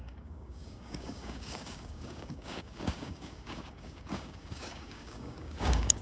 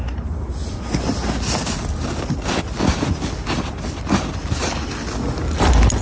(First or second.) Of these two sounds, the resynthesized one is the first